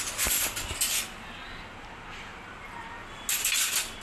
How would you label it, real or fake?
real